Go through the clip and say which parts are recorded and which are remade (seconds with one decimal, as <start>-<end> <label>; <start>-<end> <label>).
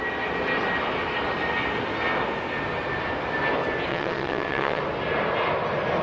0.0-3.9 recorded; 3.9-4.8 remade; 4.8-6.0 recorded